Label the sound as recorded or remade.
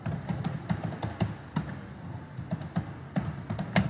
recorded